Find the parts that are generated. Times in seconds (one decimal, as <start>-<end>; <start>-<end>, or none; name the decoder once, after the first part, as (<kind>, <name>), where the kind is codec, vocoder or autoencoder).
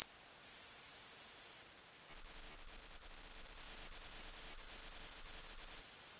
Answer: 2.1-5.8 (codec, HILCodec)